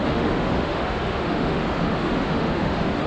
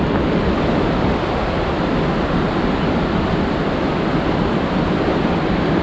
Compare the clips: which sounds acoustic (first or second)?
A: second